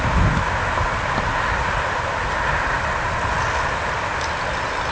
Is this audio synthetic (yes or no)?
no